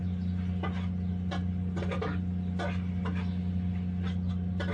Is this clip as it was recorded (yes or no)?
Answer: yes